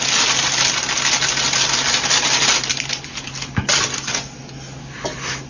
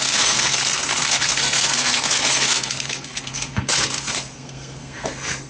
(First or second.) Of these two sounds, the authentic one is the first